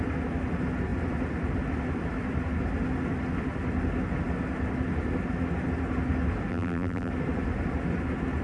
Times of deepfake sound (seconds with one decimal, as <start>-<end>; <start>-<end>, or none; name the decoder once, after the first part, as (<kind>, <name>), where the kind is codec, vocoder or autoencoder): 6.5-7.1 (vocoder, BigVGAN v2)